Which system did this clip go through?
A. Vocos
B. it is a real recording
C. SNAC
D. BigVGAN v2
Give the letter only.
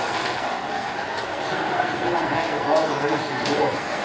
C